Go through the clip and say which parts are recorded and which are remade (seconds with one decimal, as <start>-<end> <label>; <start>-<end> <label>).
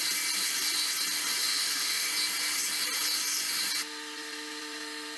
0.0-1.4 recorded; 1.4-2.1 remade; 2.1-5.2 recorded